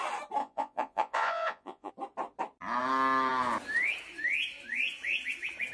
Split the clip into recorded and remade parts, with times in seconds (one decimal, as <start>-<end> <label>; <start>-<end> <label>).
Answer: 0.0-0.4 recorded; 0.4-1.9 remade; 1.9-5.7 recorded